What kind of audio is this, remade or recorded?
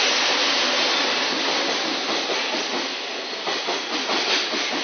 recorded